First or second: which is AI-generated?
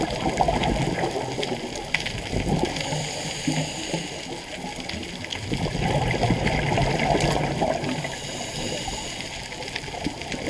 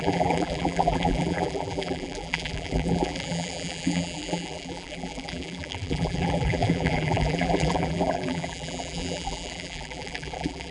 second